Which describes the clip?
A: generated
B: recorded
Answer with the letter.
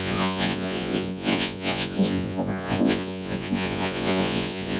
A